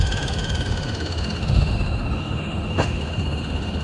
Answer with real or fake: fake